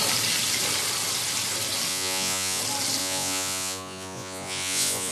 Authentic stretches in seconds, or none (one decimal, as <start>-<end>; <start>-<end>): 0.0-1.9; 2.6-3.0